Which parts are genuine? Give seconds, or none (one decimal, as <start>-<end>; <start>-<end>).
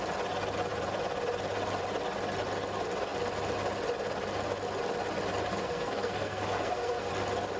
0.0-5.5; 7.1-7.6